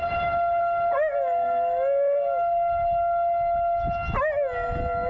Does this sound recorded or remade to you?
recorded